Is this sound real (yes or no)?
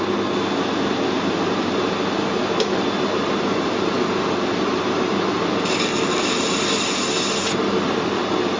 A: yes